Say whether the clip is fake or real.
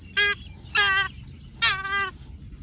real